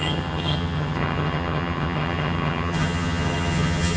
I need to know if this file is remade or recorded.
remade